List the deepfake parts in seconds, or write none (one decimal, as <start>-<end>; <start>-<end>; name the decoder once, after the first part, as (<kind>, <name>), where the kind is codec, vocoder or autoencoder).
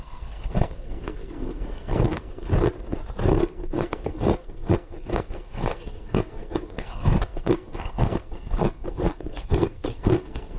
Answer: 0.0-2.5 (codec, SNAC); 3.4-10.6